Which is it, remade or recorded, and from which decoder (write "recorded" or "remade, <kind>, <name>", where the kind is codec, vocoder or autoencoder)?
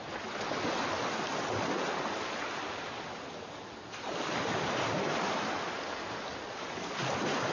recorded